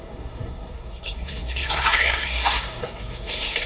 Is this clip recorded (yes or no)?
no